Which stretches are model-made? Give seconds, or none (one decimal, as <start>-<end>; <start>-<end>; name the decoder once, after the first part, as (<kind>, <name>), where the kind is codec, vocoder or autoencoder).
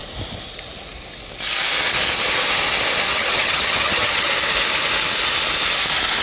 3.1-4.3 (vocoder, HiFi-GAN)